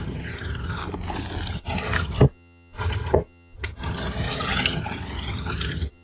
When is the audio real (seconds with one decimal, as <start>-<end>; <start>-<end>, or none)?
0.8-1.5